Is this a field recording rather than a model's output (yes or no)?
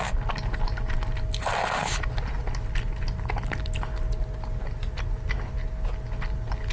yes